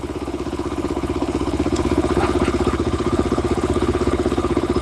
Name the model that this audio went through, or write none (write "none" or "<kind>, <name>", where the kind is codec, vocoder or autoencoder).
codec, HILCodec